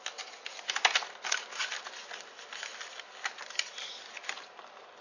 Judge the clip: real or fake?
real